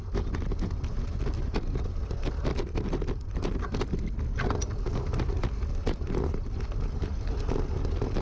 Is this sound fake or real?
real